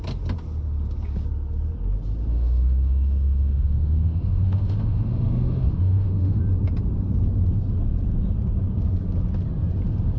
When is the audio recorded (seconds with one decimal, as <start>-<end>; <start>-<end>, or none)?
0.0-2.3; 6.4-10.2